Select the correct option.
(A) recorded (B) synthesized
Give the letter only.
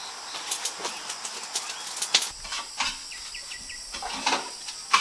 A